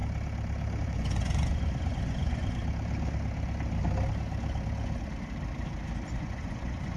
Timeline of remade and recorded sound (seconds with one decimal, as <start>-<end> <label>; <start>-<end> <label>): 0.0-0.8 recorded; 0.8-2.6 remade; 2.6-6.1 recorded; 6.1-7.0 remade